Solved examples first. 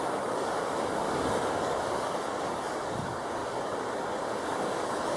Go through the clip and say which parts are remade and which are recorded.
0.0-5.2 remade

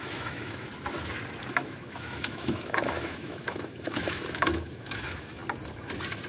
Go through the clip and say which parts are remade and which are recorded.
0.0-0.7 remade; 0.7-1.5 recorded; 1.5-5.4 remade; 5.4-6.3 recorded